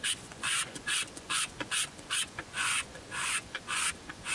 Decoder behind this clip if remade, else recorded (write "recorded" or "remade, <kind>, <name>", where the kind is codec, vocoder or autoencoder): remade, vocoder, Vocos